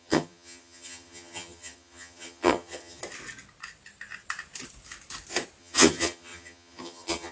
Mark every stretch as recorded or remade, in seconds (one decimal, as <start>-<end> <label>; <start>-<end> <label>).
0.0-3.0 remade; 3.0-5.6 recorded; 5.6-7.3 remade